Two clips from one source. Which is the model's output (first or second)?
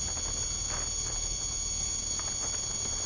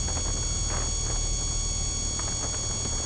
first